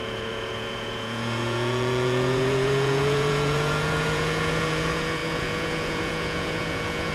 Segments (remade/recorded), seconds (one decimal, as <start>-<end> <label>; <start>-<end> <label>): 0.0-7.1 remade